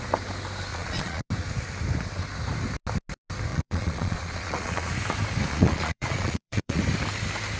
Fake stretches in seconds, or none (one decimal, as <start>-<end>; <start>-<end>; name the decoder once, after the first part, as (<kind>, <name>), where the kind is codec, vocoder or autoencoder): 0.7-1.3 (vocoder, Vocos); 3.5-4.9; 5.5-6.8